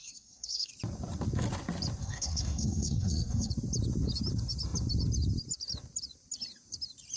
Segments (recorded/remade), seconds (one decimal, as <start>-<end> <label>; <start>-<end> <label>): 0.0-0.7 remade; 0.7-2.0 recorded; 2.0-3.5 remade; 3.5-7.2 recorded